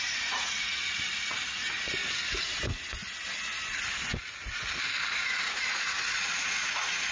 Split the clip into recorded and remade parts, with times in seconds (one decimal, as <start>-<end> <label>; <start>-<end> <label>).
0.0-0.8 remade; 0.8-5.1 recorded; 5.1-7.1 remade